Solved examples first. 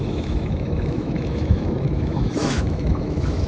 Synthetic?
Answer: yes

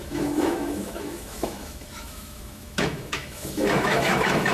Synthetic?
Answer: yes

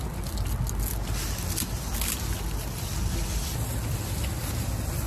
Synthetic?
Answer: no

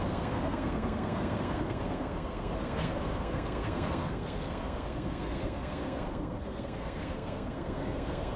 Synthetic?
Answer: yes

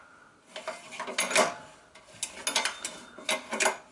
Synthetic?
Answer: no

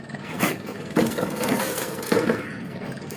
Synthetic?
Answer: yes